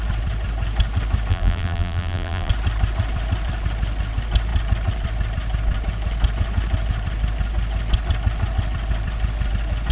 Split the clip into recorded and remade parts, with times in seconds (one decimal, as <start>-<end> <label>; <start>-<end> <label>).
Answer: 0.0-1.3 recorded; 1.3-2.5 remade; 2.5-9.9 recorded